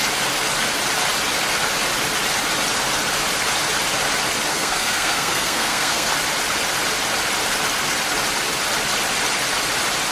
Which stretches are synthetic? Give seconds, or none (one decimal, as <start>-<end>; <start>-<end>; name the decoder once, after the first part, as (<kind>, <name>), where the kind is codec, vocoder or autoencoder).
4.5-6.1 (codec, SNAC)